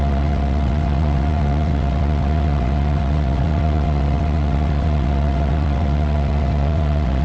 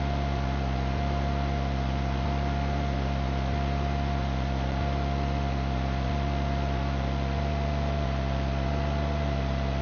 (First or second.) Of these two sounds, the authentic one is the second